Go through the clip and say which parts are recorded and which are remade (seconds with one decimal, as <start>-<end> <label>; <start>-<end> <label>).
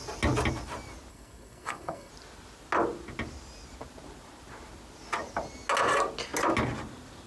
0.0-1.1 recorded; 1.1-2.1 remade; 2.1-7.3 recorded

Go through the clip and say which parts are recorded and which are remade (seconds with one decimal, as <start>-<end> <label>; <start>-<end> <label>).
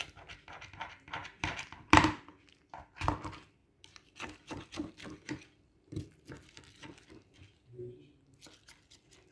0.0-1.2 recorded; 1.2-2.2 remade; 2.2-3.6 recorded; 3.6-7.8 remade; 7.8-9.3 recorded